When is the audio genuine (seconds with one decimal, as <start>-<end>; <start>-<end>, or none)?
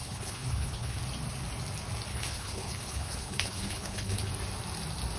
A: 1.0-2.1; 4.3-5.2